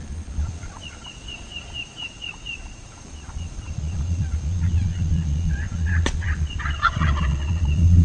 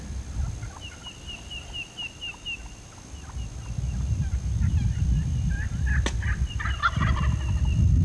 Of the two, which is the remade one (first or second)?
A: first